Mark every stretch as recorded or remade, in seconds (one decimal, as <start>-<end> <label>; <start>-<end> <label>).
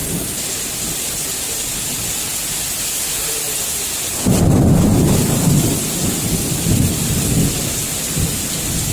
0.0-8.9 recorded